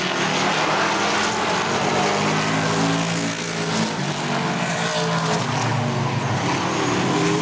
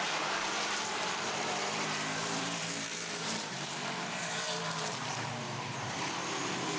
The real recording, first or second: first